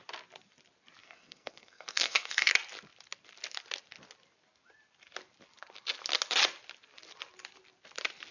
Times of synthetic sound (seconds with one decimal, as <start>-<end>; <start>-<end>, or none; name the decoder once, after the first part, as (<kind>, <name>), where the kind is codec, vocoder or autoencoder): 1.0-2.5 (codec, SNAC)